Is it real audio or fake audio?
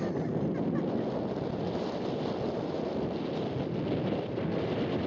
real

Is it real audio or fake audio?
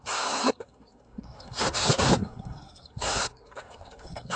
fake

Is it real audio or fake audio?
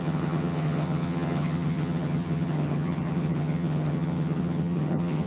fake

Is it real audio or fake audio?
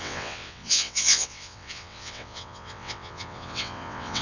fake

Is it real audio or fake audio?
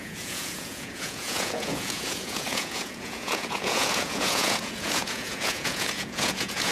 fake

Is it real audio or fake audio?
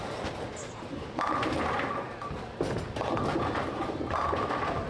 real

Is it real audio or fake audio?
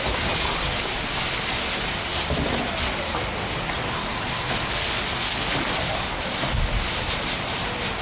real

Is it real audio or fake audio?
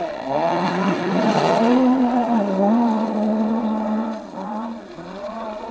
fake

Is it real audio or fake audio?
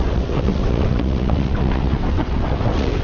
fake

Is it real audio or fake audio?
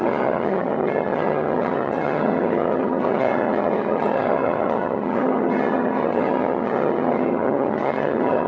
fake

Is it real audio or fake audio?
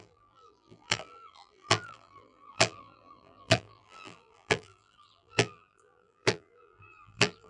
fake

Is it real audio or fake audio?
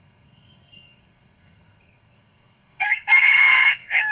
fake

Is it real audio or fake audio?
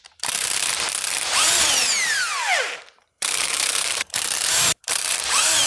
fake